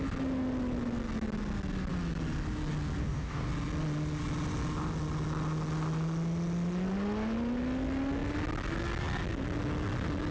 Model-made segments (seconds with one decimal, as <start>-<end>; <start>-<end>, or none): 3.0-3.5